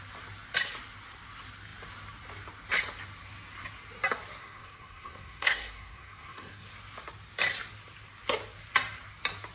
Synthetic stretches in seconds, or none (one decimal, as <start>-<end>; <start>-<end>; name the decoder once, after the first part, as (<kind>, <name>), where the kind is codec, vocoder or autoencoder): 4.4-6.7 (codec, SNAC)